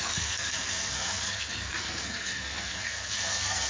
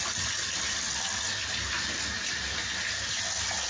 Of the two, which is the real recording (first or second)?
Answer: second